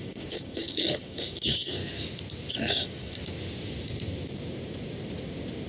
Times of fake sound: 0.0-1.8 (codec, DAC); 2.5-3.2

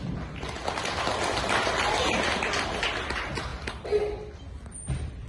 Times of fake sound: none

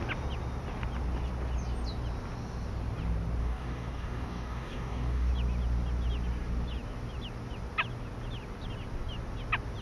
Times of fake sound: 3.4-5.3 (codec, DAC)

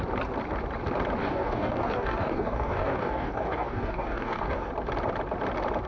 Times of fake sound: 1.2-4.7 (codec, DAC)

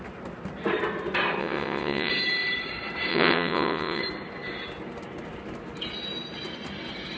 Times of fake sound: 1.4-2.1 (vocoder, WaveNeXt); 3.1-4.0

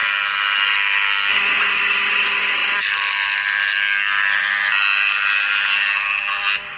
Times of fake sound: 2.6-4.4 (vocoder, BigVGAN v2)

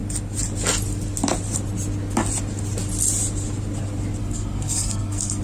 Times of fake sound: 4.2-5.4 (codec, SNAC)